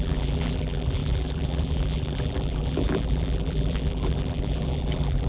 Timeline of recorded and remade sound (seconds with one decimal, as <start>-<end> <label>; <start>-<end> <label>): 0.0-5.3 remade